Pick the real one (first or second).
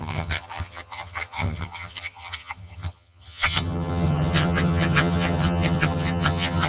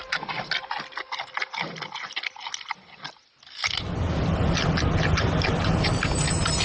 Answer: second